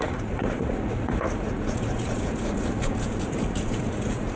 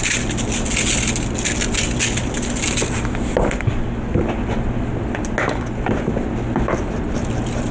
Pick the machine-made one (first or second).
first